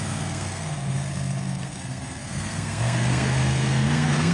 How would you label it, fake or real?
fake